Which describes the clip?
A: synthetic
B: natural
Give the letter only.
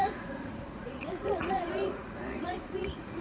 A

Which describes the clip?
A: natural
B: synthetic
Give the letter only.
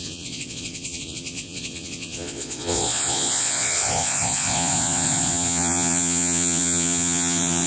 B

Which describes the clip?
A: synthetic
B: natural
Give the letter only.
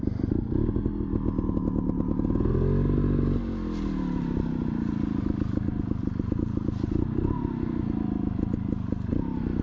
B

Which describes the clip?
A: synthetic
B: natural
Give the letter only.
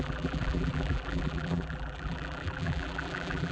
A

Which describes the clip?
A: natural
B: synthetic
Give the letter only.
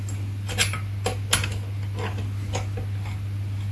A